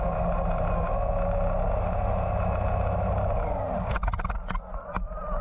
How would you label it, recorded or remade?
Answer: recorded